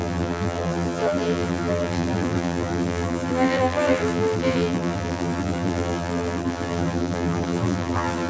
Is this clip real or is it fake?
fake